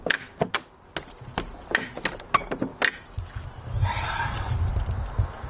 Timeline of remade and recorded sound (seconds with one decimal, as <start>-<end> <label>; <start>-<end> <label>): 0.0-5.5 recorded